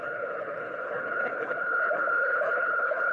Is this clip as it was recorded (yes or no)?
no